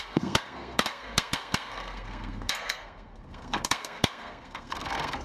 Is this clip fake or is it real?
fake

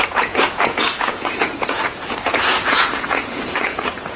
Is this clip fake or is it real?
fake